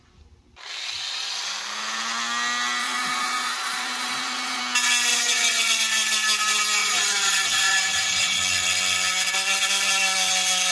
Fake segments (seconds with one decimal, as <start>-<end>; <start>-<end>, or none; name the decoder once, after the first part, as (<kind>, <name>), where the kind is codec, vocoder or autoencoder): 2.8-4.6 (vocoder, Vocos); 5.1-5.8; 6.8-8.4